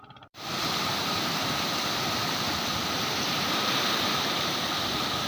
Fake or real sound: fake